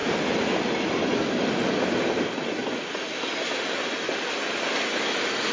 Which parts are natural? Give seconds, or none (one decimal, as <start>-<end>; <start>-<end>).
0.0-5.5